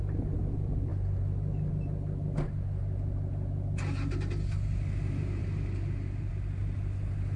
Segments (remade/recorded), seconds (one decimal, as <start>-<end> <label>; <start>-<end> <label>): 0.0-7.4 recorded